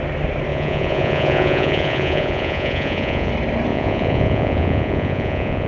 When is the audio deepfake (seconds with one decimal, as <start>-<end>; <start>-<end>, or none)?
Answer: 0.5-3.3; 3.7-5.7